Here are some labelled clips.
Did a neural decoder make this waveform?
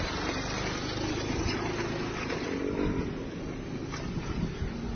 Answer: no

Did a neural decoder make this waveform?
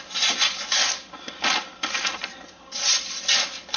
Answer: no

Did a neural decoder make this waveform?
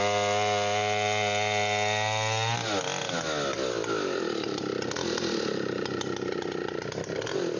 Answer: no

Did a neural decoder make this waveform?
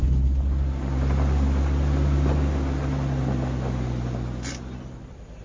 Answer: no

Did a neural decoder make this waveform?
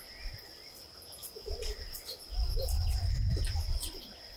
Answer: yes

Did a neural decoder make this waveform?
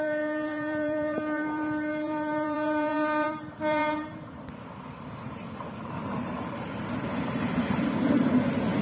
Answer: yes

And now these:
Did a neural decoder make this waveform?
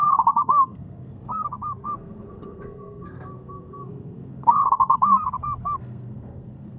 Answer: yes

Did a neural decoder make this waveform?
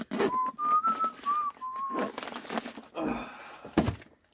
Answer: no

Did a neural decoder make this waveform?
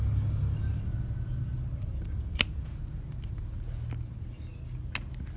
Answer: no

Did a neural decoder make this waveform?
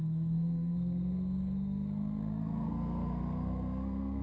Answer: yes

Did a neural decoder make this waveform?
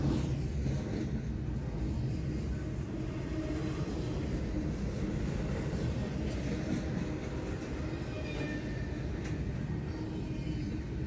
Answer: no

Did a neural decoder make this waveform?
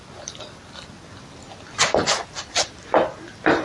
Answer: no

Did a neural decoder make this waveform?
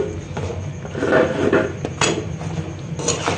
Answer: no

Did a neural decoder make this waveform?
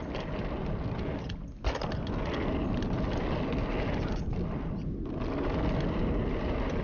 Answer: no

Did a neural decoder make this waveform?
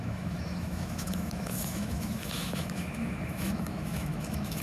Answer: yes